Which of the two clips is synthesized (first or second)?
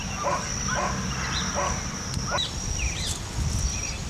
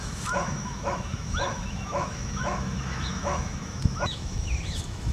second